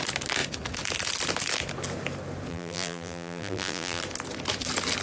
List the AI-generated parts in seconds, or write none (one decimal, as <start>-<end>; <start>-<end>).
2.5-4.0